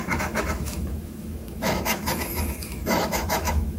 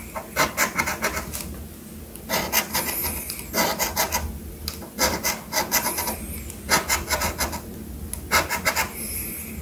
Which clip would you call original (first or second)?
second